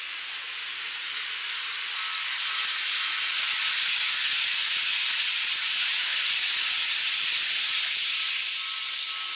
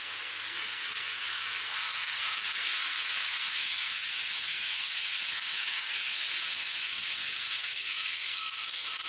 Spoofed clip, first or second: second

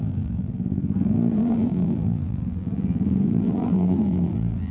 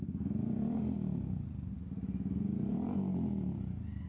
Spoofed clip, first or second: first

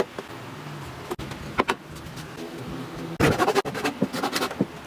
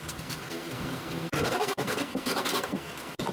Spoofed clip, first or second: second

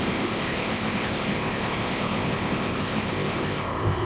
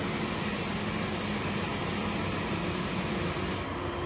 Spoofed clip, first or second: first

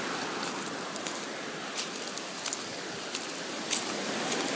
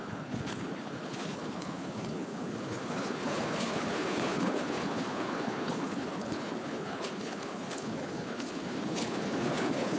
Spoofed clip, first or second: second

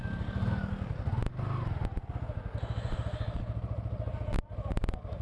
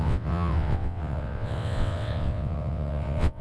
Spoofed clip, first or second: second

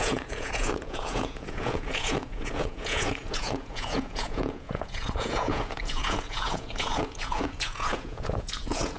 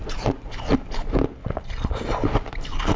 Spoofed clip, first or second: first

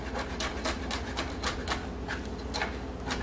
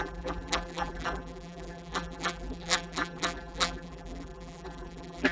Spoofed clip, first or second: second